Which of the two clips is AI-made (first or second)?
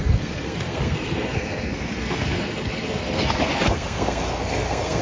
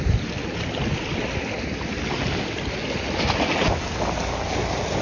first